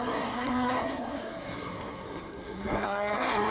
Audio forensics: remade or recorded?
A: remade